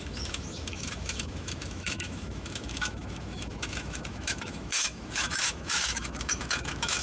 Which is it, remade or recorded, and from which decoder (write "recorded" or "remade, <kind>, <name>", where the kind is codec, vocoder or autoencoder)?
remade, autoencoder, DAC-VAE